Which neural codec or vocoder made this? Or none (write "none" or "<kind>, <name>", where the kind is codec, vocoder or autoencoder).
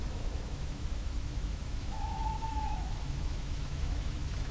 autoencoder, DAC-VAE